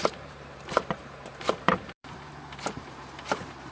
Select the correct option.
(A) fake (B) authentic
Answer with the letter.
A